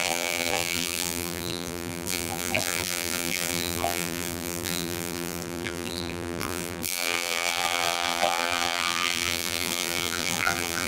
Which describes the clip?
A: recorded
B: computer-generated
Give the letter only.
B